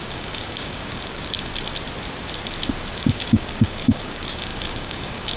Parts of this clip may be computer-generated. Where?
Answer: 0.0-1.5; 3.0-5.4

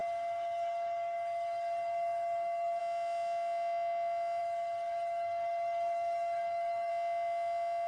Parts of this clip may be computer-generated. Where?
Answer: 0.0-2.8; 4.4-6.9

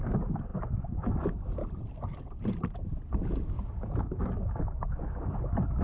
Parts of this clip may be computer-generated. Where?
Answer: 0.0-1.6; 3.2-5.8

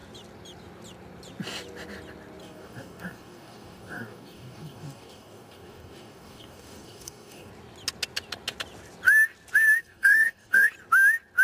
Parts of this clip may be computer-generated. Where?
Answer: 2.4-7.5; 9.8-10.7

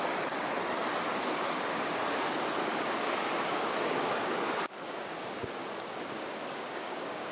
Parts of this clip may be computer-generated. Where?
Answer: 1.1-2.0; 2.7-7.3